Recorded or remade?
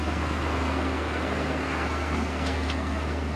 remade